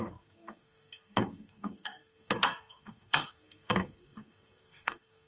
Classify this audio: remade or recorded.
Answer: remade